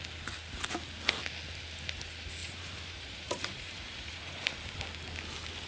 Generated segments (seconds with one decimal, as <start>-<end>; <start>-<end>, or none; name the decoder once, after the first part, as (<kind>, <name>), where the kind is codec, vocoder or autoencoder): 2.4-4.5 (vocoder, Vocos)